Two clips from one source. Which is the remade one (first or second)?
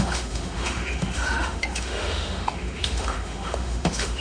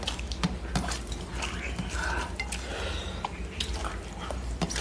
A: first